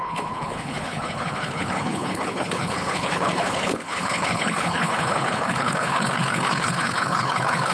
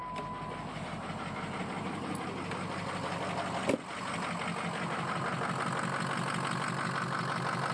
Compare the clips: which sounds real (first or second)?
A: second